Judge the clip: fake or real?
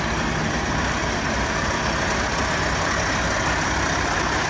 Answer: fake